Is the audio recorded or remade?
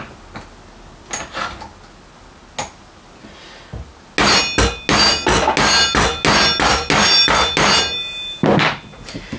recorded